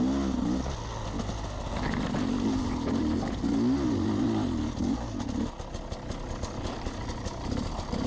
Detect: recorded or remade recorded